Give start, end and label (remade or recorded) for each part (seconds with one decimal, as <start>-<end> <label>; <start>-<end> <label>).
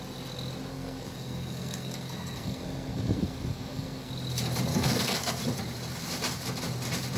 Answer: 0.0-0.7 recorded; 0.7-4.1 remade; 4.1-4.7 recorded; 4.7-5.4 remade; 5.4-7.2 recorded